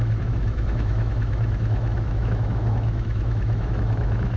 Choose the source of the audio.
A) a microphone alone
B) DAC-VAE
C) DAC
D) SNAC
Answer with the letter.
B